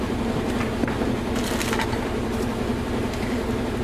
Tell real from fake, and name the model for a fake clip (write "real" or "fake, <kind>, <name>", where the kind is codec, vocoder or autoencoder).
real